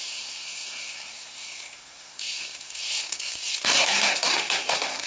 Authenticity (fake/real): fake